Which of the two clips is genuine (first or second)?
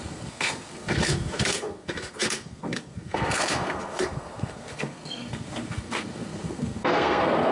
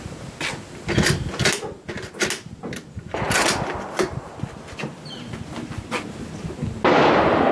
second